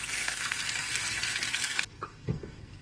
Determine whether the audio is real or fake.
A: fake